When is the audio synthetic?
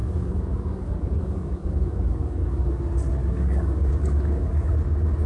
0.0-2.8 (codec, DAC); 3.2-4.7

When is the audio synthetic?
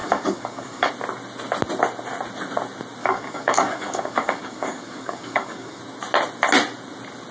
0.0-0.9 (codec, DAC); 3.0-5.8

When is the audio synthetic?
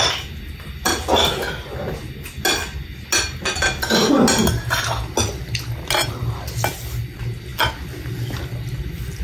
none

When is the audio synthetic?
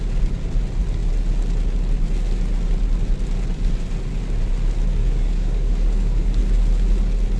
5.0-6.4 (codec, DAC)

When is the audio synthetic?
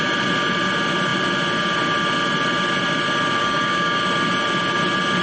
3.4-4.0 (codec, DAC)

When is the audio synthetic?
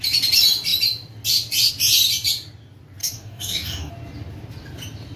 3.0-3.9 (codec, DAC)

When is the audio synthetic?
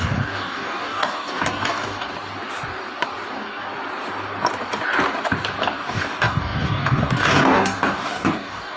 0.0-2.1 (codec, DAC); 3.3-3.7; 5.6-8.8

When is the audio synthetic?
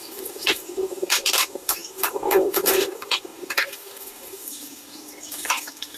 0.0-6.0 (codec, DAC)